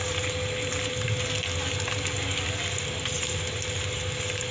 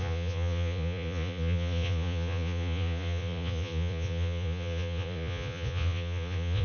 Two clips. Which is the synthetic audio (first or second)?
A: second